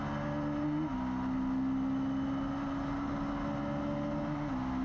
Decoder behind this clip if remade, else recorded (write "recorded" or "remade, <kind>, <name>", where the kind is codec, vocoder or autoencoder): recorded